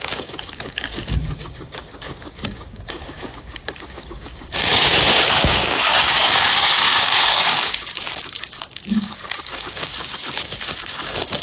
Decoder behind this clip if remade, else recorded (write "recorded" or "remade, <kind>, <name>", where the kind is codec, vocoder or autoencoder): remade, codec, DAC